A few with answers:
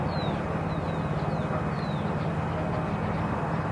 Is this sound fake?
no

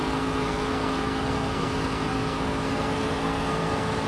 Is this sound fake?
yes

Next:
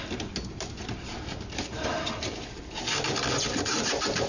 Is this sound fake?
no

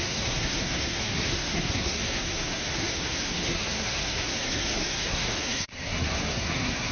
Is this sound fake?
yes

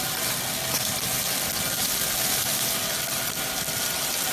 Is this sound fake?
no